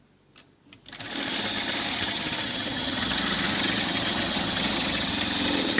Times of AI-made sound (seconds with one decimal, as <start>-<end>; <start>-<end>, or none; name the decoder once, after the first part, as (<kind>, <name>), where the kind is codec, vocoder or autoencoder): 1.9-5.1 (vocoder, HiFi-GAN)